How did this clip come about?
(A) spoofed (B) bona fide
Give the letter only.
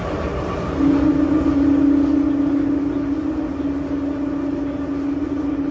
B